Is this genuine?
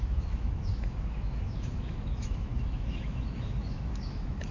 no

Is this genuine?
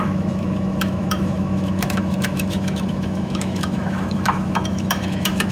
no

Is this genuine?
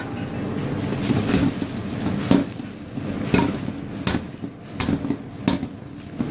yes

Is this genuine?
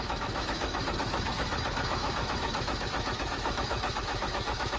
no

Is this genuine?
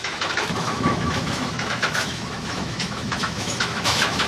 no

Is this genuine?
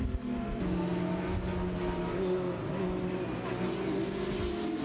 yes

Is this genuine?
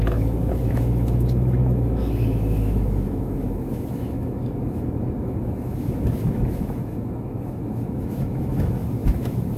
no